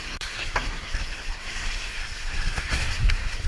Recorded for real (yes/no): no